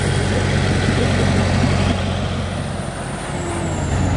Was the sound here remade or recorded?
recorded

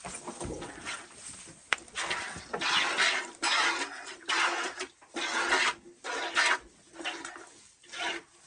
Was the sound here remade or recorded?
recorded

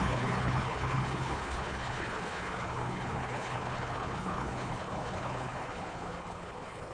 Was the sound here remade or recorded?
remade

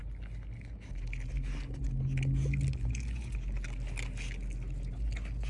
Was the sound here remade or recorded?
recorded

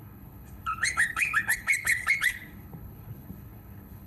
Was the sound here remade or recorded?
remade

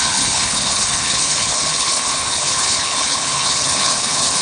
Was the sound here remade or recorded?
remade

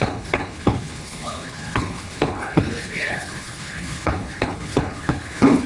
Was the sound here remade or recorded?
remade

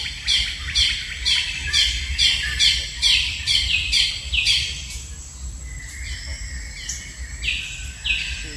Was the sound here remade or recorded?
recorded